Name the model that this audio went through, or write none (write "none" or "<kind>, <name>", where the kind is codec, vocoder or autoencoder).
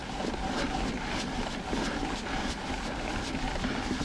none